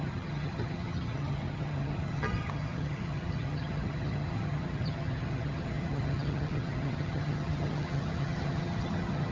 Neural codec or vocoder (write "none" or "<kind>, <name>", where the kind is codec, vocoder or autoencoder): vocoder, HiFi-GAN